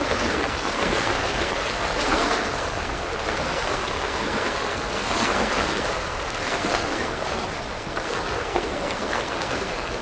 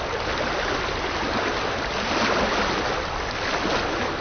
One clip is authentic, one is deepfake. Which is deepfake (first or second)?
first